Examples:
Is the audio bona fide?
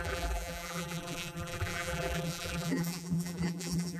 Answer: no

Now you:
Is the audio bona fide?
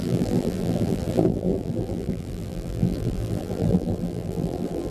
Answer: no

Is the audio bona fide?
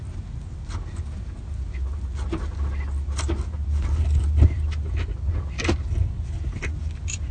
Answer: yes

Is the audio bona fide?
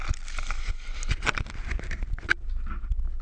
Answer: yes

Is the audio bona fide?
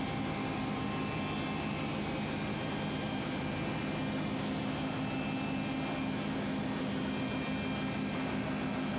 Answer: yes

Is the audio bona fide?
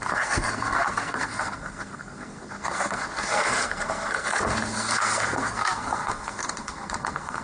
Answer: no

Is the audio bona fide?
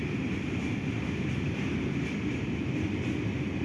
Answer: yes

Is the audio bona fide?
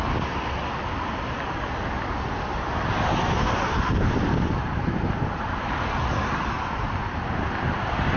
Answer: yes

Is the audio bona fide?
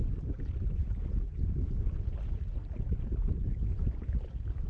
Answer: yes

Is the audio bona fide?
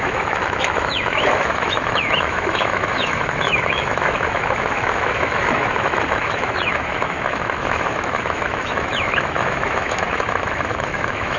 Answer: no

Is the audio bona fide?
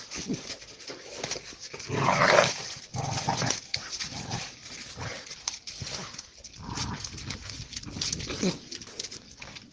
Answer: yes